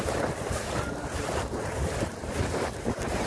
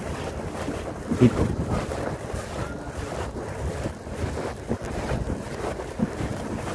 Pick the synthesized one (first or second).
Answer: first